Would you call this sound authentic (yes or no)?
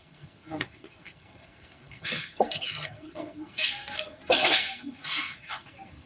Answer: no